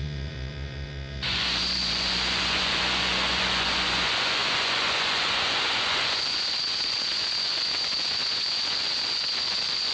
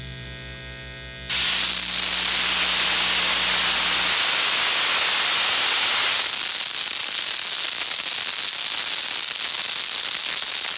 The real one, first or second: second